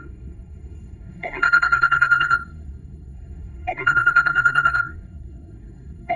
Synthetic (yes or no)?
yes